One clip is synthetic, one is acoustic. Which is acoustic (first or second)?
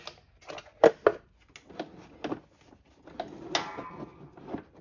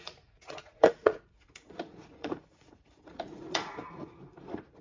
first